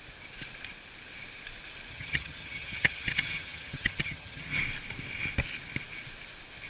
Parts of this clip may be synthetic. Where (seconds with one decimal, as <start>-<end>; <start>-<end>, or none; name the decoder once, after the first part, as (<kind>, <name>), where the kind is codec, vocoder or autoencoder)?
1.9-4.6 (vocoder, HiFi-GAN)